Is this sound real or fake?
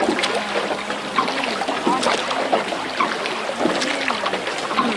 real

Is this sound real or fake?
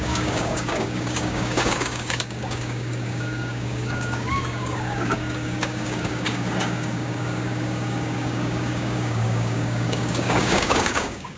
fake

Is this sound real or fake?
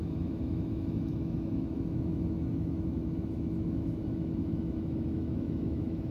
fake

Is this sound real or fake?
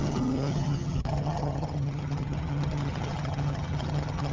fake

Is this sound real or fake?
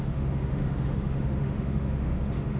fake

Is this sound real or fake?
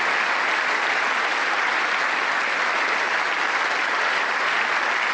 real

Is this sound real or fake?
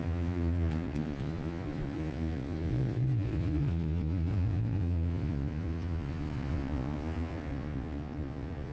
fake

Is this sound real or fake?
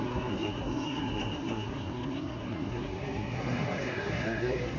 fake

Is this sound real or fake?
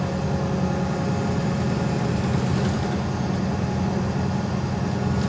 real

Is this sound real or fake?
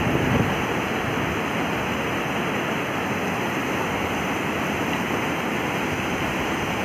real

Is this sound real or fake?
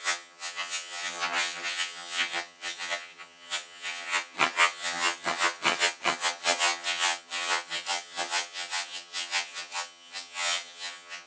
fake